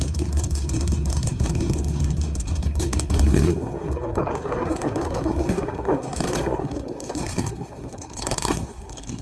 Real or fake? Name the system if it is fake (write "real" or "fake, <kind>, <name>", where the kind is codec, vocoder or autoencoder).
fake, codec, SNAC